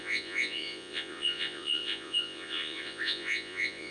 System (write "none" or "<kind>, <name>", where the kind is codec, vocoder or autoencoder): vocoder, Vocos